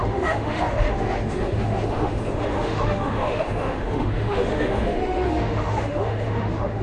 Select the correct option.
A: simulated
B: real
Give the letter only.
A